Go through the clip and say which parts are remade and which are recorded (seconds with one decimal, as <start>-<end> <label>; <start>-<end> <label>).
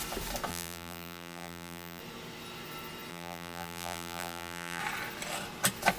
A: 0.0-0.5 recorded; 0.5-2.0 remade; 2.0-3.1 recorded; 3.1-4.8 remade; 4.8-6.0 recorded